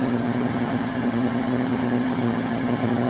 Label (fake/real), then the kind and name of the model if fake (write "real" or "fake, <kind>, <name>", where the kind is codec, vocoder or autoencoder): fake, vocoder, HiFi-GAN